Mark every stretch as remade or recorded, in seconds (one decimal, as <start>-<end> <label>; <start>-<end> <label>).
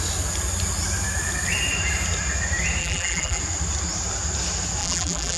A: 0.0-2.8 recorded; 2.8-3.4 remade; 3.4-4.8 recorded; 4.8-5.4 remade